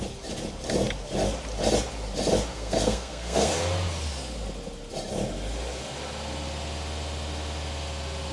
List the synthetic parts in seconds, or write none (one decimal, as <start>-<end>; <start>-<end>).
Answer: 2.5-3.5